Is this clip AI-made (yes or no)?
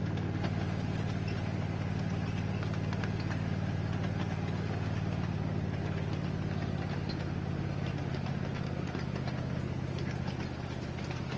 no